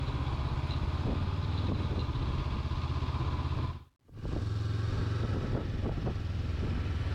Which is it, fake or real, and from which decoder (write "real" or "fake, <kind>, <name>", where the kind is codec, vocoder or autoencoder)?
real